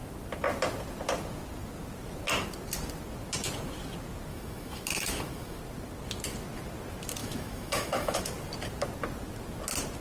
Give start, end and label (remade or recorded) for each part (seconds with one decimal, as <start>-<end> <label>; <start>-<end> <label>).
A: 0.0-4.3 recorded; 4.3-5.6 remade; 5.6-7.2 recorded; 7.2-8.2 remade; 8.2-10.0 recorded